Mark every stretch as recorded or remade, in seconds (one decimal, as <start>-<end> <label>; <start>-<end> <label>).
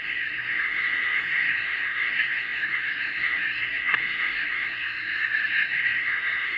0.0-6.6 remade